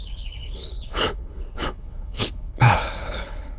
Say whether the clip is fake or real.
fake